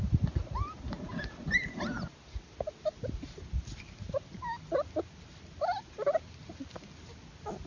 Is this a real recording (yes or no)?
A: yes